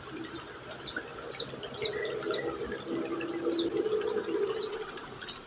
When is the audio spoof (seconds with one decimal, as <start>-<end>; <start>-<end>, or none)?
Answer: 4.7-5.5